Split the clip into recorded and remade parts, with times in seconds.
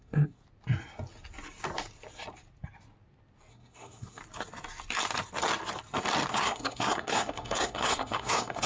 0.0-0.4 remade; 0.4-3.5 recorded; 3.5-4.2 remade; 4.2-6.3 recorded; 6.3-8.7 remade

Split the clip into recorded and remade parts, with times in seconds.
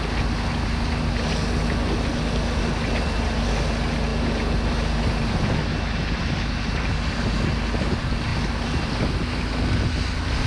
0.0-10.5 recorded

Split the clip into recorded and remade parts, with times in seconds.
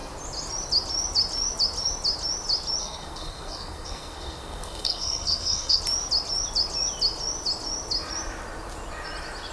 0.0-2.8 recorded; 2.8-5.8 remade; 5.8-9.5 recorded